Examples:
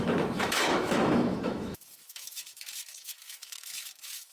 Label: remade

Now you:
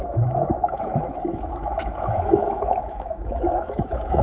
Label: remade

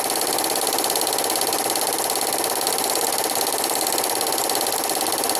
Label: remade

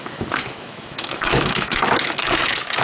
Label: remade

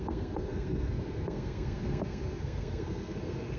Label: remade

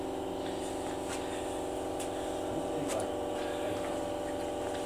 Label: recorded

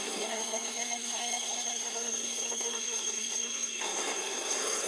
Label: remade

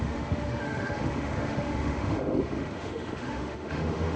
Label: remade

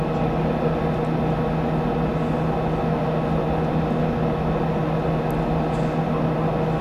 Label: recorded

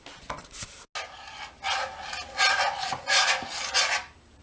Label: recorded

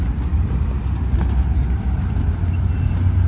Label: recorded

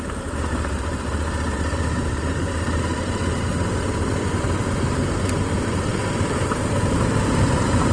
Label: remade